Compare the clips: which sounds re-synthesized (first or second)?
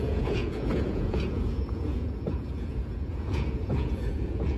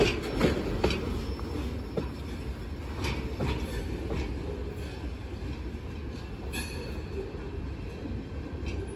first